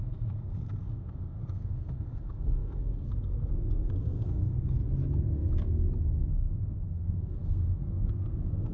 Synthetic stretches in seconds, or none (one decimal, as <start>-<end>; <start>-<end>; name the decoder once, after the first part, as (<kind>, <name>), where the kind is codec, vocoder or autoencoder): 0.0-4.8 (codec, SNAC); 6.3-8.7